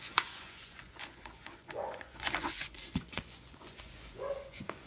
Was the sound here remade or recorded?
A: remade